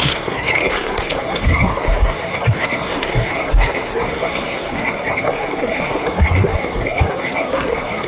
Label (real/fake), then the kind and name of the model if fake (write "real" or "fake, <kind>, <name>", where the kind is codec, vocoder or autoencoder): fake, codec, SNAC